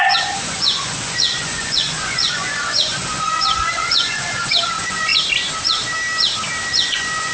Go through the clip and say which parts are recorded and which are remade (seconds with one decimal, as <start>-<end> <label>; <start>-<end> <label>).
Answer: 0.0-5.1 remade; 5.1-6.7 recorded; 6.7-7.3 remade